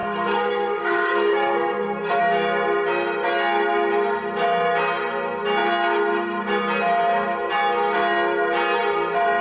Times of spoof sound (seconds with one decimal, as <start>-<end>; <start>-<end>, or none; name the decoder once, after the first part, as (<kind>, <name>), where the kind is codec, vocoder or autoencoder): 0.0-2.2 (codec, SNAC)